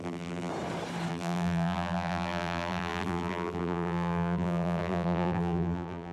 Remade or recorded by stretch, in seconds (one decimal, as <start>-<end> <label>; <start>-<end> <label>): 0.0-0.5 remade; 0.5-1.1 recorded; 1.1-6.1 remade